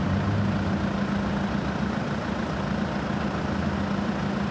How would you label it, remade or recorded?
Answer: recorded